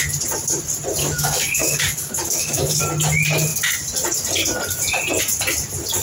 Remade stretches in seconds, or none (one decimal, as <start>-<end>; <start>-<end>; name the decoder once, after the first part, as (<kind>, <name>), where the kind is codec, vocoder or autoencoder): 1.0-2.8 (codec, DAC)